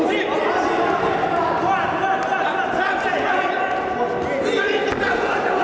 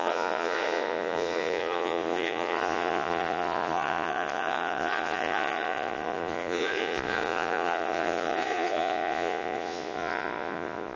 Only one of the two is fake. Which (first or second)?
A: second